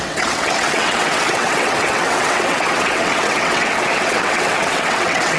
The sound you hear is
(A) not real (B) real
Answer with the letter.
A